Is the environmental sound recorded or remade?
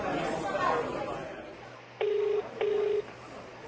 recorded